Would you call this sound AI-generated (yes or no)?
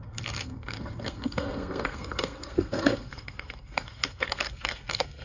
yes